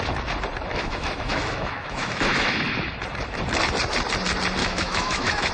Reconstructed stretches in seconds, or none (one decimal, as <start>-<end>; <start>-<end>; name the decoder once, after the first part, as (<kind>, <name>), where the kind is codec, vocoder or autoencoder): 0.7-2.6 (autoencoder, DAC-VAE); 4.6-5.5